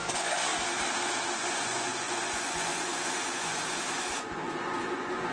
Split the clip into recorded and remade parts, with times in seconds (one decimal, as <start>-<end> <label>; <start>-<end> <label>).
0.0-0.5 remade; 0.5-1.4 recorded; 1.4-5.3 remade